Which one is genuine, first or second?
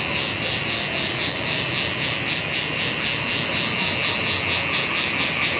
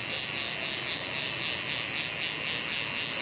second